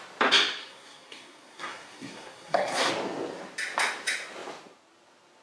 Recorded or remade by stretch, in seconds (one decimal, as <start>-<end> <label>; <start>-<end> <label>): 0.0-0.6 recorded; 0.6-2.9 remade; 2.9-5.4 recorded